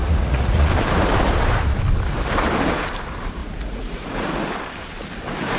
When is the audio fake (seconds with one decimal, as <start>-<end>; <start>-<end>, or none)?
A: 0.0-0.7; 3.4-4.4